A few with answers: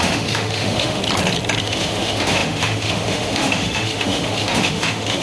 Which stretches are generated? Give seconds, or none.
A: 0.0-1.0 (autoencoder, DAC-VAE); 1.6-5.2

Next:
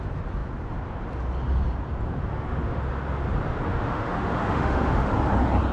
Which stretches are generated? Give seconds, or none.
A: 2.3-2.8 (autoencoder, DAC-VAE); 3.7-5.1

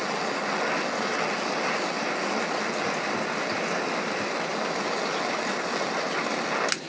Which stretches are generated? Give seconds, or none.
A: none

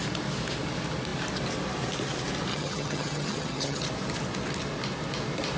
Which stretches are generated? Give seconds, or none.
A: 2.5-3.8 (vocoder, HiFi-GAN)

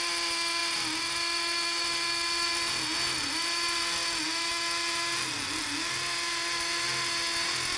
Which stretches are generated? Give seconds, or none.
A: none

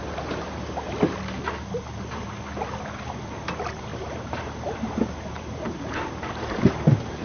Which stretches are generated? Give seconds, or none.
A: 3.9-6.5 (vocoder, BigVGAN v2)

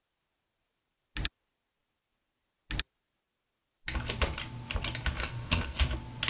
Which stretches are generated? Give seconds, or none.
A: 5.2-5.8 (codec, SNAC)

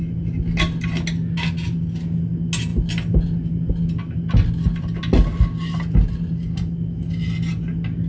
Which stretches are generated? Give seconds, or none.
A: none